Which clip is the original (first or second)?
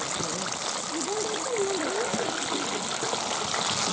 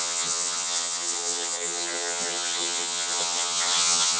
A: first